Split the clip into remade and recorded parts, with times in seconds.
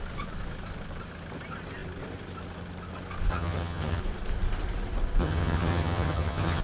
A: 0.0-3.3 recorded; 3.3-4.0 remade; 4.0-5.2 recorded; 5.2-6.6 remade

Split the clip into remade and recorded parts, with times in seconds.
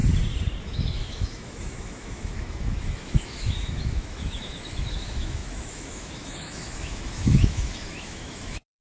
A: 0.0-0.6 recorded; 0.6-8.8 remade